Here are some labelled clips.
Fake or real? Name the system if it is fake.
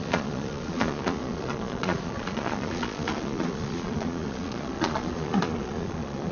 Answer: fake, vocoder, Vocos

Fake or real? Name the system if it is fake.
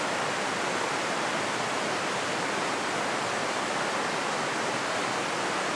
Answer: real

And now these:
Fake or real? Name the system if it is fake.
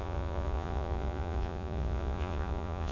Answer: fake, vocoder, Vocos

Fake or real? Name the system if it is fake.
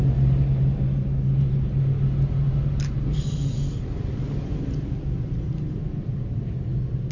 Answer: real